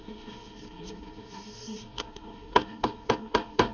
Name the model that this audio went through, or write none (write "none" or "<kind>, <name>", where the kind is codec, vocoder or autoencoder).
codec, SNAC